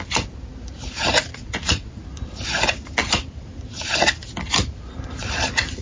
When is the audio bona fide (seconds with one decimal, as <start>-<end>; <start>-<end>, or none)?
0.0-1.3; 1.9-5.8